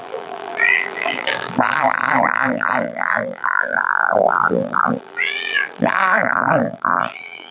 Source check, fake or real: fake